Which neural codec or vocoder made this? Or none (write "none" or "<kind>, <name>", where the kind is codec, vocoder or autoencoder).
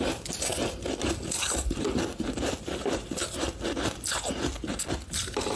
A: none